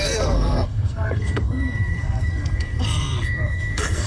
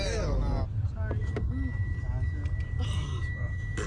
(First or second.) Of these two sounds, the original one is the second